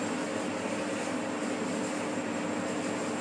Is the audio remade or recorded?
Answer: recorded